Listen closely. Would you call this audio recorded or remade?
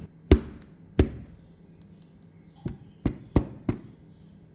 recorded